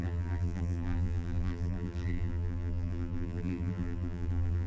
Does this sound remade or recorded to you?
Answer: remade